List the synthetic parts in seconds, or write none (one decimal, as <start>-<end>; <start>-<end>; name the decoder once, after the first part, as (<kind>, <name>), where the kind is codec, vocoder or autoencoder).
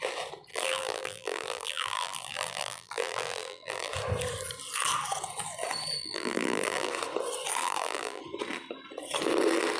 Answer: 0.5-3.9 (vocoder, BigVGAN v2); 6.0-6.9; 7.6-8.2